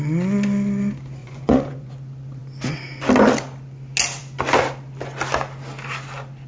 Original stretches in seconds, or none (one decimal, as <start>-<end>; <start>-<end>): 0.0-1.2; 1.9-6.5